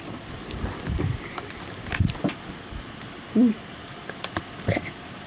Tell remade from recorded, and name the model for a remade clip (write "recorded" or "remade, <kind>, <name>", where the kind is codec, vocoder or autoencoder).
recorded